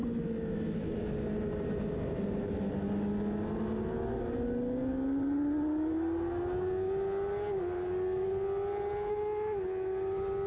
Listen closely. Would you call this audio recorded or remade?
recorded